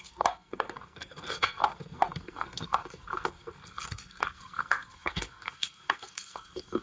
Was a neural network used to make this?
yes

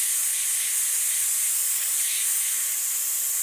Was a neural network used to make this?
no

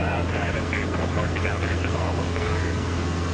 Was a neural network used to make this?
yes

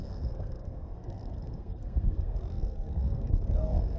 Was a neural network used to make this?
yes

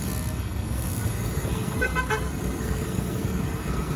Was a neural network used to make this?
yes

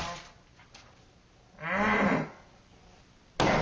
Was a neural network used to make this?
no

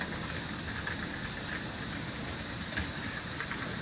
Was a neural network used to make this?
no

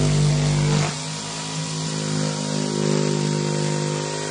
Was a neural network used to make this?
no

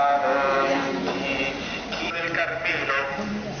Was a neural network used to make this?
no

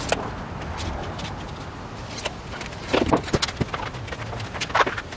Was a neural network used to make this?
no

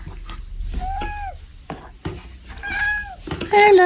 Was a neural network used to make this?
no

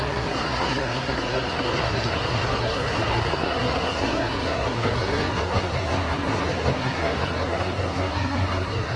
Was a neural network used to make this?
yes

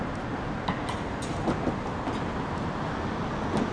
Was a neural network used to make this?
no